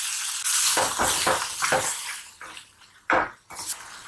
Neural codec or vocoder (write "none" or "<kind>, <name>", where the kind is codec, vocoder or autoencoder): none